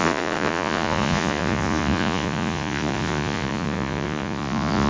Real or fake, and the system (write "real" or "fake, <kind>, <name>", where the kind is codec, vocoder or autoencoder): fake, vocoder, Vocos